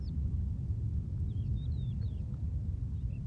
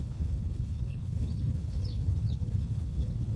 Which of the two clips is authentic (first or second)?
first